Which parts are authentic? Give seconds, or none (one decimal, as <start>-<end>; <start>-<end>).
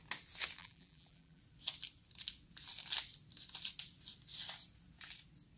0.0-0.6; 1.4-5.6